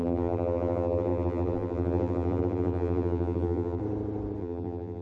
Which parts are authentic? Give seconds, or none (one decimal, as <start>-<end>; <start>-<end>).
3.8-4.4